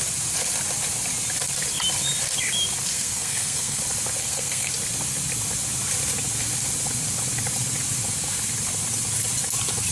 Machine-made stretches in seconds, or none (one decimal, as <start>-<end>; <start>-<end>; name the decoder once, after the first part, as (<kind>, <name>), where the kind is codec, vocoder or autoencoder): 2.9-3.8 (codec, SNAC); 4.2-4.7